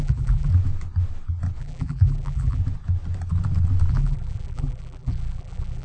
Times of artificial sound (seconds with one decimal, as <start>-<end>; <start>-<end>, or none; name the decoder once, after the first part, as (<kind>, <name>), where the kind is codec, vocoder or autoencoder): 0.0-0.5 (vocoder, BigVGAN v2); 1.6-2.6; 3.9-5.8